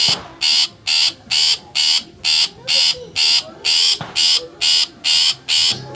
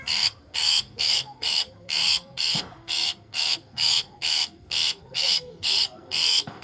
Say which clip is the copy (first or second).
second